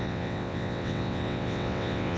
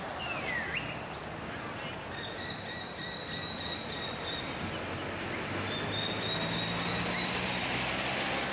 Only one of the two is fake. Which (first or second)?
first